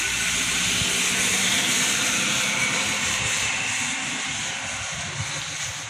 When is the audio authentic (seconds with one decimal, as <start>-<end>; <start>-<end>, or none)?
0.0-1.3; 3.5-5.9